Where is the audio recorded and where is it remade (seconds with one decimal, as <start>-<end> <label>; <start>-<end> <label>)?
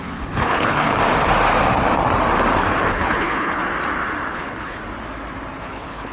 0.0-0.9 remade; 0.9-2.9 recorded; 2.9-3.6 remade; 3.6-4.3 recorded; 4.3-4.8 remade; 4.8-5.6 recorded; 5.6-6.1 remade